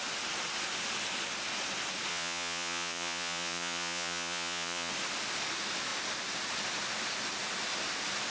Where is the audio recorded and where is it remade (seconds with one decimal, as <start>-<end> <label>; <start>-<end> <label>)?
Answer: 0.0-2.1 recorded; 2.1-4.9 remade; 4.9-8.3 recorded